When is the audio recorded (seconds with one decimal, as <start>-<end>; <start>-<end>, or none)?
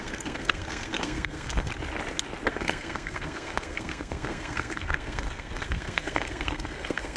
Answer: 1.7-2.5